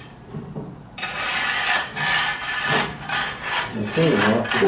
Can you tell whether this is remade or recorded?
recorded